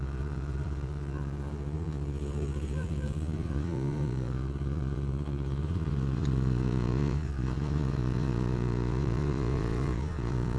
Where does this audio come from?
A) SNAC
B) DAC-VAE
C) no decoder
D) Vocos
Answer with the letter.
D